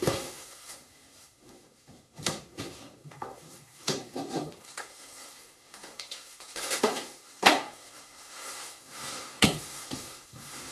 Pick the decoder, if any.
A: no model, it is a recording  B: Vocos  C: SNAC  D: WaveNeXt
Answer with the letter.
C